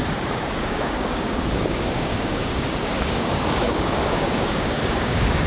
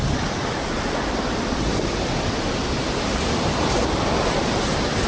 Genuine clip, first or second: second